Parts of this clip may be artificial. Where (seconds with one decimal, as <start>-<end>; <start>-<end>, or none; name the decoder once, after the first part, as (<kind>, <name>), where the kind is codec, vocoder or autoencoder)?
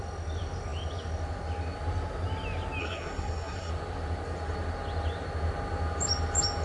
2.8-3.7 (codec, SNAC)